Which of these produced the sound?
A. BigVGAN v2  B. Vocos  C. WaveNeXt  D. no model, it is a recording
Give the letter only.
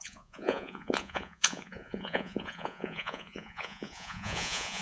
B